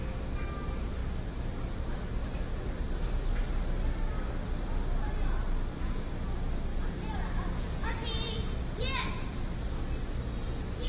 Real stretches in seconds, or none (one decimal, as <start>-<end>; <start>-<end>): 0.0-6.7; 9.4-10.9